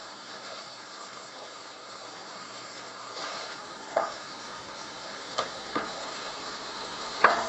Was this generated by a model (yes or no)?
yes